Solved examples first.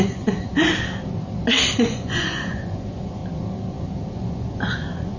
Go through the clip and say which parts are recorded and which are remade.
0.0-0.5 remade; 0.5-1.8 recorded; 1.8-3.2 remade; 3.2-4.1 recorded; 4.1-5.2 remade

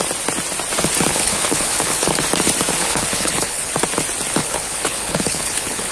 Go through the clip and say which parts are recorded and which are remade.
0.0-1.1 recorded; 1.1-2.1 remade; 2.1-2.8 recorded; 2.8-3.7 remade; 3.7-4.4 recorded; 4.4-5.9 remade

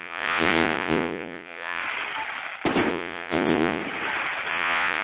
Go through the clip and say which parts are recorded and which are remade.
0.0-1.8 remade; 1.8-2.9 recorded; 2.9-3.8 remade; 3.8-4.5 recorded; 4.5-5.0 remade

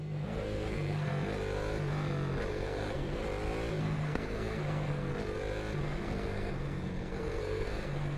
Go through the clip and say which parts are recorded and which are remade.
0.0-1.1 remade; 1.1-2.5 recorded; 2.5-3.2 remade; 3.2-3.8 recorded; 3.8-5.1 remade; 5.1-5.8 recorded; 5.8-8.2 remade

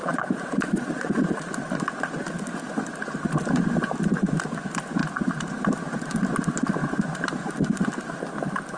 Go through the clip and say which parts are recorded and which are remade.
0.0-1.5 remade; 1.5-8.8 recorded

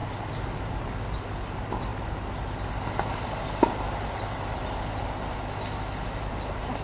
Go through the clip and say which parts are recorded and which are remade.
0.0-6.8 recorded

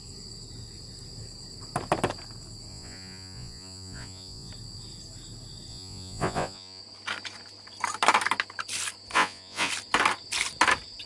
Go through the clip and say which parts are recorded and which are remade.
0.0-2.7 recorded; 2.7-4.5 remade; 4.5-5.7 recorded; 5.7-6.8 remade; 6.8-9.1 recorded; 9.1-9.7 remade; 9.7-11.1 recorded

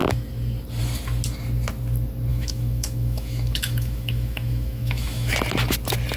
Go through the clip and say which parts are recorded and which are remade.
0.0-2.3 recorded; 2.3-5.3 remade; 5.3-6.2 recorded